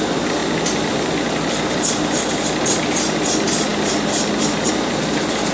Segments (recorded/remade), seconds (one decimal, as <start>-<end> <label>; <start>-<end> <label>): 0.0-5.5 recorded